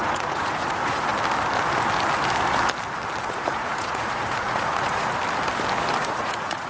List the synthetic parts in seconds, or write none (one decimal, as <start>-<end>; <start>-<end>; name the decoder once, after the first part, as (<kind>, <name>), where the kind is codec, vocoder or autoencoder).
0.0-1.1 (vocoder, Vocos); 3.2-5.2; 6.0-6.7